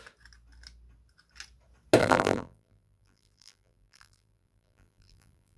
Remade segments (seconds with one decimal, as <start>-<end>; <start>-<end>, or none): 2.0-5.6